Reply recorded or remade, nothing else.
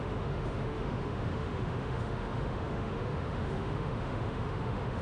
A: remade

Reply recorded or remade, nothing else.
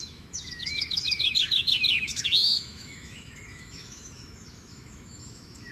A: remade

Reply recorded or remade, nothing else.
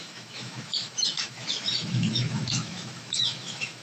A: remade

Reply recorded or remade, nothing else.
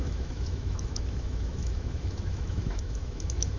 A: remade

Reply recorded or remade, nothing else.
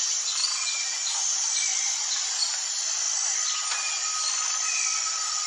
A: recorded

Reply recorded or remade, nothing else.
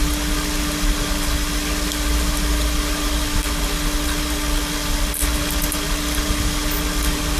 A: recorded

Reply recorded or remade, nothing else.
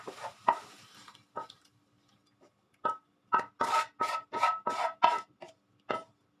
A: recorded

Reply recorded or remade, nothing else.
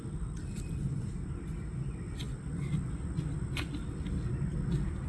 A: recorded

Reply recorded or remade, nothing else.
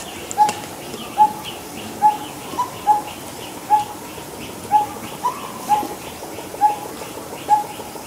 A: recorded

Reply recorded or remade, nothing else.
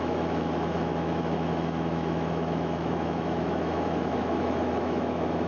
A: remade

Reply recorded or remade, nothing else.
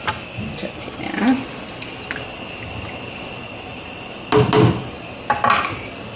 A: recorded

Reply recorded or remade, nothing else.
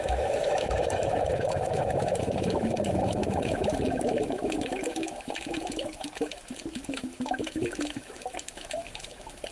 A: remade